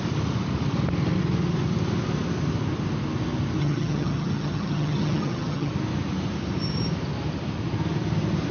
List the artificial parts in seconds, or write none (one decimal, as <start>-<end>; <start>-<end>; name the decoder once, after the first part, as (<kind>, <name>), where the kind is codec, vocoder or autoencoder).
3.6-5.7 (vocoder, HiFi-GAN)

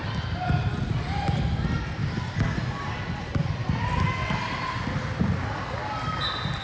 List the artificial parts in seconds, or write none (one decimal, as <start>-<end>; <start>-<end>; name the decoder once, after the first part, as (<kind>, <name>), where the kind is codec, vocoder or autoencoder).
none

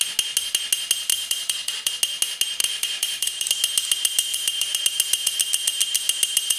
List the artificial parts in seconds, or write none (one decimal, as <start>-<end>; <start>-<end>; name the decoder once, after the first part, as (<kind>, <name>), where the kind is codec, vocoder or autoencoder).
1.1-1.9 (vocoder, BigVGAN v2); 2.6-3.5; 4.3-4.8

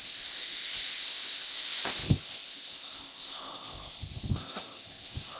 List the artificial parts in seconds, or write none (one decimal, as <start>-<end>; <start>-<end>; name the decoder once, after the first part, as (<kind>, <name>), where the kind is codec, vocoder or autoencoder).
0.0-5.4 (codec, ZipCodec)